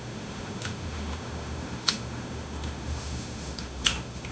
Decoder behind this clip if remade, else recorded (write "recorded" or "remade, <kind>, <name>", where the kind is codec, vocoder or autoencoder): remade, autoencoder, DAC-VAE